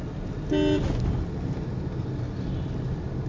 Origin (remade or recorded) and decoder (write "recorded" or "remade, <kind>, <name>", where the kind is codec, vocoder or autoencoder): recorded